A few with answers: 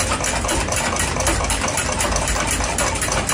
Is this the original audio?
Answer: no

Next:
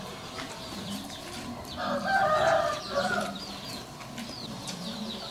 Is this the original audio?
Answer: no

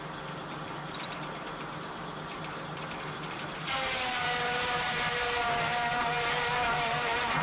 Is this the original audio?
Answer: no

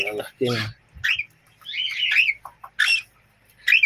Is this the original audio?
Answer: yes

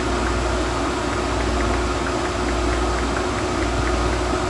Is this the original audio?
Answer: yes